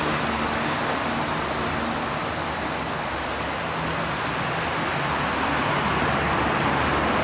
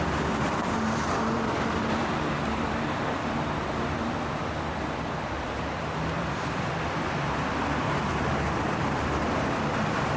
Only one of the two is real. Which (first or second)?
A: first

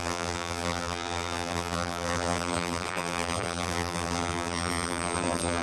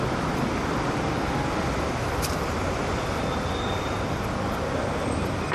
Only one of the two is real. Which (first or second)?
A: second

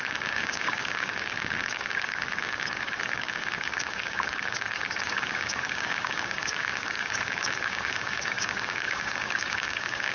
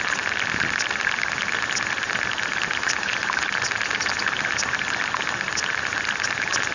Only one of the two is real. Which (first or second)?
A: second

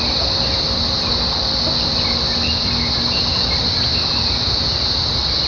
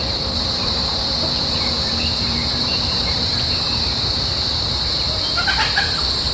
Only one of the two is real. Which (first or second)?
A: first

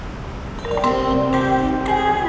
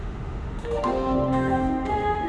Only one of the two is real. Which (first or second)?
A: first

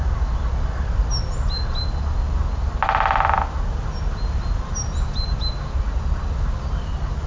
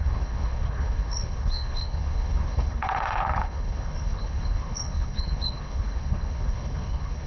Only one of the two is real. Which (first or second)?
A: first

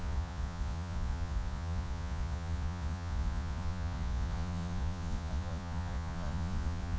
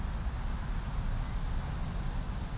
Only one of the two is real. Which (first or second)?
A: second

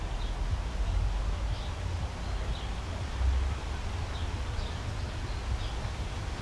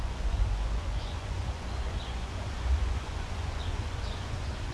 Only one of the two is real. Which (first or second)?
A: first